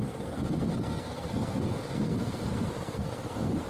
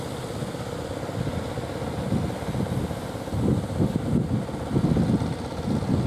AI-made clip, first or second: first